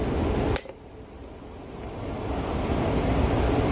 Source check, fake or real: real